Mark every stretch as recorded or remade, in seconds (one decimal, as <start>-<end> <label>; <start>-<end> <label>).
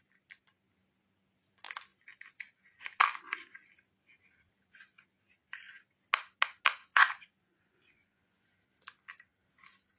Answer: 0.0-6.8 recorded; 6.8-8.6 remade; 8.6-10.0 recorded